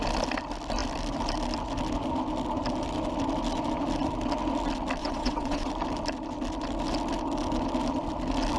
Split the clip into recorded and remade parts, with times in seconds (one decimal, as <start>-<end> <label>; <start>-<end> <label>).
0.0-5.0 recorded; 5.0-5.7 remade; 5.7-8.6 recorded